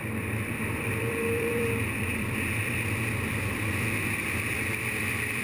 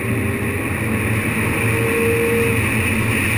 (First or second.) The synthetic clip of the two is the first